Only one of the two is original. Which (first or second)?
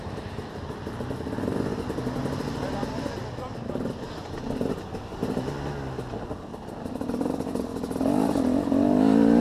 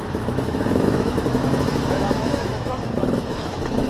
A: first